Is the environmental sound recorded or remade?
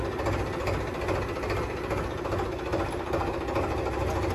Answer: recorded